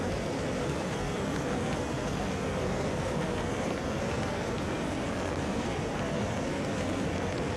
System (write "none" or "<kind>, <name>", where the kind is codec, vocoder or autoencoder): codec, SNAC